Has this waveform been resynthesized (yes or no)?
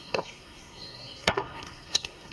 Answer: yes